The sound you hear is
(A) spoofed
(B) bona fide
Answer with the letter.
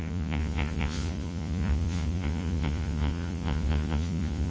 A